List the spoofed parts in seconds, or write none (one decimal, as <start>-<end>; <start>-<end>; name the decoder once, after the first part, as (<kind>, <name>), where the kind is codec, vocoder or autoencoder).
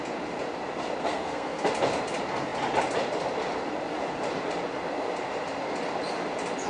1.0-1.7 (codec, SNAC)